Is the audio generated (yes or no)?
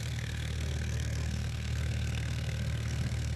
yes